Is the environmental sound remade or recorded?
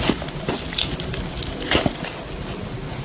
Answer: recorded